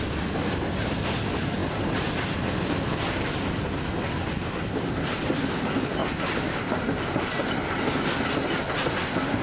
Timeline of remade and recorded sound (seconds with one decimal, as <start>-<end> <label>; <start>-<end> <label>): 0.0-9.4 recorded